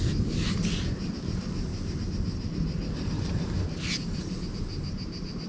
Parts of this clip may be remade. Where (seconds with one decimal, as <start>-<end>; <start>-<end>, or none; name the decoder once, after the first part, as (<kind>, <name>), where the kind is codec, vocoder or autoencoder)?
none